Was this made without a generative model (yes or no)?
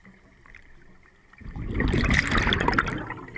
yes